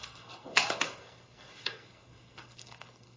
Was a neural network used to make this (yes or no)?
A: yes